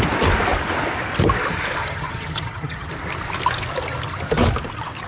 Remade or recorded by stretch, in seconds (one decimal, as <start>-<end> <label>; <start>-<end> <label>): 0.0-1.8 recorded; 1.8-2.9 remade; 2.9-5.1 recorded